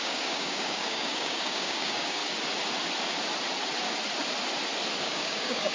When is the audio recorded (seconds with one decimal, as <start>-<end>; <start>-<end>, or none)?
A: 2.2-5.0